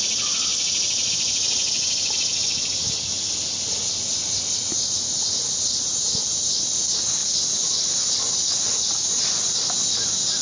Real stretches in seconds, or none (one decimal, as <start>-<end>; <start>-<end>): 0.0-10.4